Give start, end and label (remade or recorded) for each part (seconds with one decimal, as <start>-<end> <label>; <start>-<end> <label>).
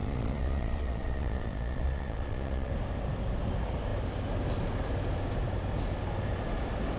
0.0-2.7 remade; 2.7-7.0 recorded